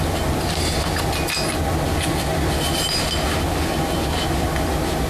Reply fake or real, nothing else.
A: real